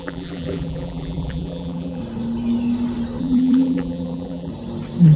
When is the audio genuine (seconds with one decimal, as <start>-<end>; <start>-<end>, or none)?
2.0-3.2; 4.5-5.2